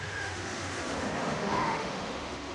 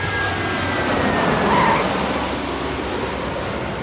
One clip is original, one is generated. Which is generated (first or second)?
first